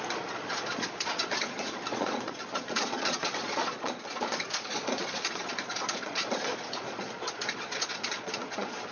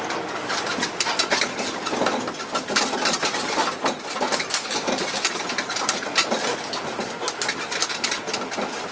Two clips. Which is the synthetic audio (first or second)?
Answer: first